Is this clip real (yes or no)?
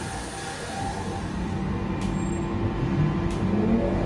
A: yes